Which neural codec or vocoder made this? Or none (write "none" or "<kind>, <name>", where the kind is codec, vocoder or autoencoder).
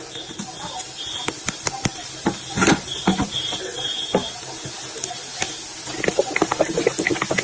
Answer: none